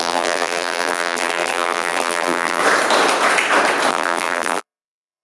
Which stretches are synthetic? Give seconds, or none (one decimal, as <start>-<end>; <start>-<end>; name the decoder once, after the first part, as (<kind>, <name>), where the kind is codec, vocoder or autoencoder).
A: 0.0-2.6 (vocoder, BigVGAN v2); 3.9-5.2